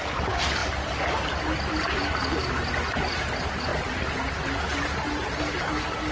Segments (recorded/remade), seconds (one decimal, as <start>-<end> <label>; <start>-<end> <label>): 0.0-6.1 recorded